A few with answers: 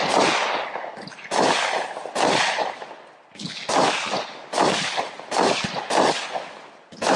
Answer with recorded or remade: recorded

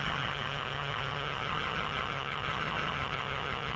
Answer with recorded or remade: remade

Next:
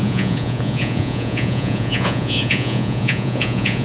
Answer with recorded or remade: remade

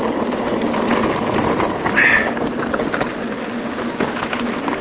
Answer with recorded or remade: recorded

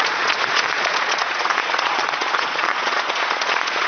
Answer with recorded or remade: remade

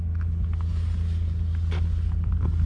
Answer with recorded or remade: recorded